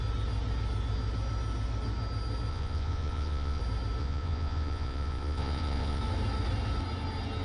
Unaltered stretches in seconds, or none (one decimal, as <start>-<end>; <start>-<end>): 0.0-2.5; 3.6-4.0; 6.0-7.4